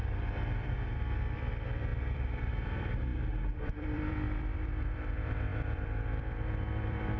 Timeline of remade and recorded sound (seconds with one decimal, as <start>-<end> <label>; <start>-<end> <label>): 0.0-7.2 remade

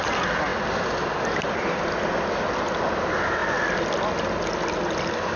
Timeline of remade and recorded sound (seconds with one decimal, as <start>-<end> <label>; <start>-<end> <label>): 0.0-5.4 recorded

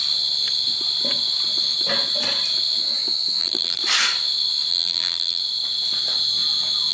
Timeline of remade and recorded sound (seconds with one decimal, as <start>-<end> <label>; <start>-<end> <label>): 0.0-3.4 recorded; 3.4-3.8 remade; 3.8-4.7 recorded; 4.7-5.4 remade; 5.4-6.9 recorded

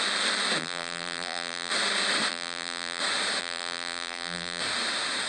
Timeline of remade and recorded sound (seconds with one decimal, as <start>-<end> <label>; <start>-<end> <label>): 0.0-0.6 recorded; 0.6-1.7 remade; 1.7-2.3 recorded; 2.3-3.0 remade; 3.0-3.4 recorded; 3.4-4.6 remade; 4.6-5.3 recorded

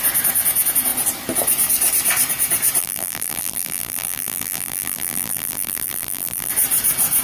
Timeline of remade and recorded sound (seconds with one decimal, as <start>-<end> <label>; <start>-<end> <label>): 0.0-2.8 recorded; 2.8-6.5 remade; 6.5-7.2 recorded